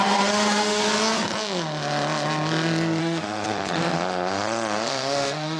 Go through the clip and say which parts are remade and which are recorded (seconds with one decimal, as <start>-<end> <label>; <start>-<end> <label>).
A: 0.0-0.8 remade; 0.8-3.0 recorded; 3.0-5.6 remade